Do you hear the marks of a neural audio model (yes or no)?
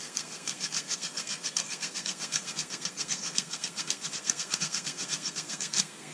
yes